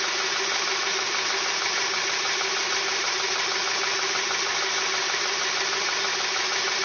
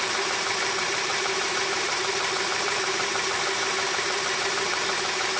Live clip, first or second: first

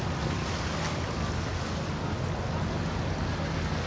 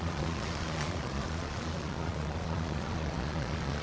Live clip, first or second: first